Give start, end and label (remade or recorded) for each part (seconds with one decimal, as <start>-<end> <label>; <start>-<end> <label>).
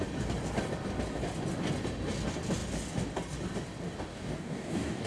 0.0-4.1 recorded; 4.1-5.1 remade